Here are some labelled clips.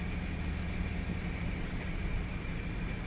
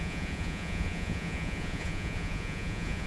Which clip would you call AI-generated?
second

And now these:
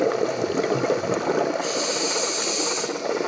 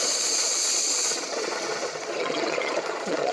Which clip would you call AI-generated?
second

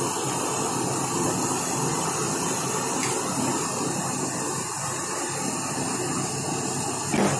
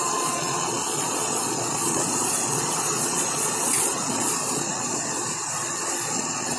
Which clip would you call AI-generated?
second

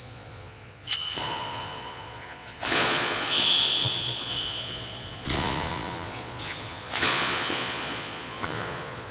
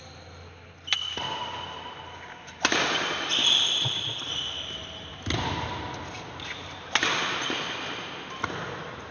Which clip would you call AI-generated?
first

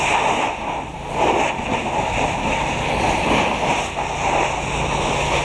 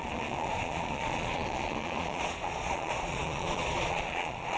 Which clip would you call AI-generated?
second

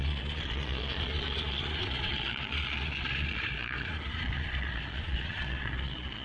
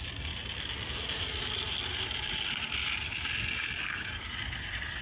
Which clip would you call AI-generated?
first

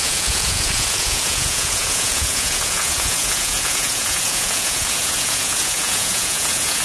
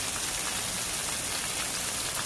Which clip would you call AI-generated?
first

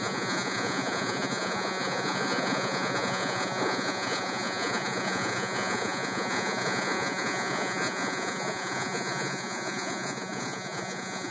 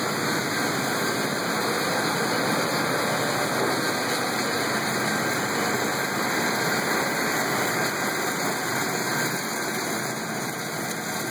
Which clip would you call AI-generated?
first